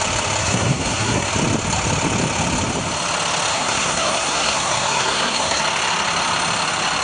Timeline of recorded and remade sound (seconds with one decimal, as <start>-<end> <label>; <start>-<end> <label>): 0.0-0.4 recorded; 0.4-1.3 remade; 1.3-3.5 recorded; 3.5-5.6 remade; 5.6-7.0 recorded